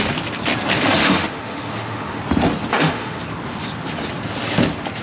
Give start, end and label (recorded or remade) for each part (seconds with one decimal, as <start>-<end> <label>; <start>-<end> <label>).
0.0-1.0 recorded; 1.0-2.2 remade; 2.2-2.7 recorded; 2.7-3.2 remade; 3.2-5.0 recorded